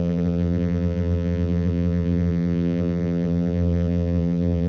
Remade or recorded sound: remade